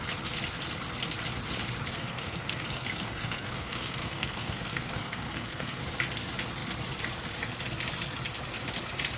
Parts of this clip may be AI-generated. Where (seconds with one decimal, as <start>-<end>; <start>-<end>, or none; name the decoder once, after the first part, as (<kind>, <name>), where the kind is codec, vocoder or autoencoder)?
1.9-5.8 (codec, SNAC)